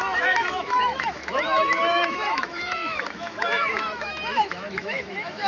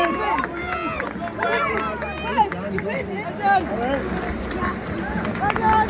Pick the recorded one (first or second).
second